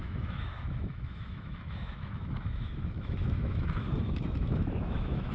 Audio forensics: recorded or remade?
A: remade